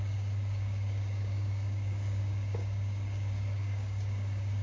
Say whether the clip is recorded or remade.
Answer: remade